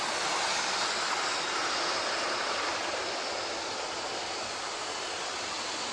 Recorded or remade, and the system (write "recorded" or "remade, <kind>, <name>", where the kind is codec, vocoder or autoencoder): recorded